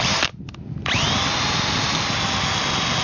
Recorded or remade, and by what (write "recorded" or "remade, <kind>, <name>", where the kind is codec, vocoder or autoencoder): recorded